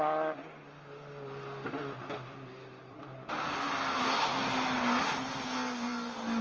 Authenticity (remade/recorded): recorded